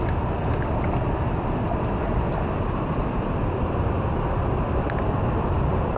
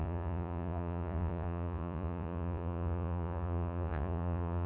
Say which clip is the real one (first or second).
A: first